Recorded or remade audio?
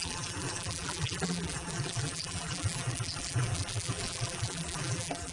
remade